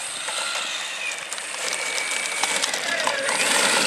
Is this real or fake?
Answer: fake